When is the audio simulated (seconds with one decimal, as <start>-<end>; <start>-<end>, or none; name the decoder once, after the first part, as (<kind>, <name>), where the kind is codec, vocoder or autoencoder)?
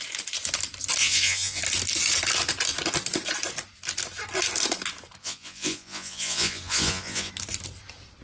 1.0-1.6 (vocoder, Vocos); 5.2-7.3